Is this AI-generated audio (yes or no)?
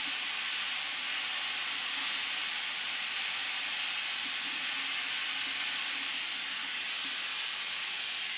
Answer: no